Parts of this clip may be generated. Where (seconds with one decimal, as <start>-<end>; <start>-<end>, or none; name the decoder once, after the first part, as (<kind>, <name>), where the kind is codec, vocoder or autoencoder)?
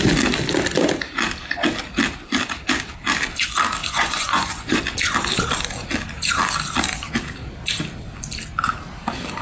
3.8-4.8 (vocoder, Vocos)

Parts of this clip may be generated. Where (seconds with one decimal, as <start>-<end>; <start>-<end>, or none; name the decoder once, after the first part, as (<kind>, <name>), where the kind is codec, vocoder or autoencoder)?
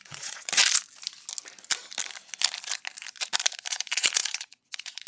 0.0-0.6 (vocoder, Vocos); 3.7-5.1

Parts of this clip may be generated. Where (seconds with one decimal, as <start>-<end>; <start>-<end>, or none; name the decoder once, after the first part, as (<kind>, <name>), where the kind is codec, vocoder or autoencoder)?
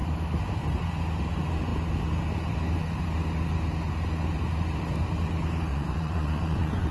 5.7-6.9 (vocoder, Vocos)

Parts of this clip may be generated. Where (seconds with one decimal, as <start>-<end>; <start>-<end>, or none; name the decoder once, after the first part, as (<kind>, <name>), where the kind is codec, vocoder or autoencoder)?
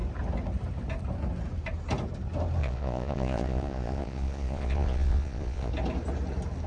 2.6-5.7 (vocoder, Vocos)